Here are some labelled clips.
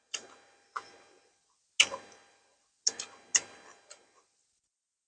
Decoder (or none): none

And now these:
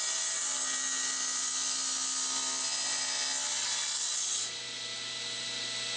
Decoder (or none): none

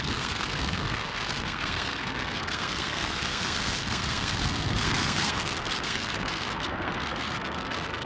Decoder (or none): codec, SNAC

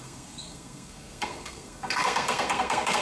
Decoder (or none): codec, SNAC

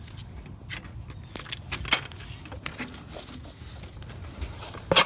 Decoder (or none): none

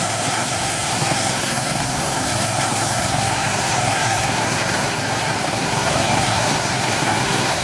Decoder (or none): codec, SNAC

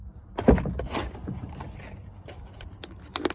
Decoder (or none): none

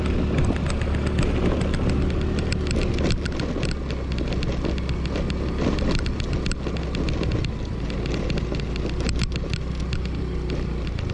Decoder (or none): none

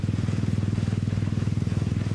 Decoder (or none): none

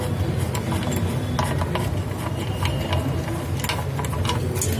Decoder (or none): none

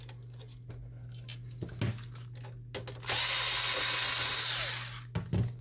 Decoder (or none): none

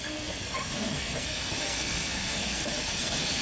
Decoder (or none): codec, SNAC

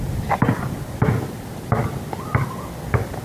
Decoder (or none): none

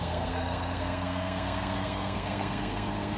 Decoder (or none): codec, SNAC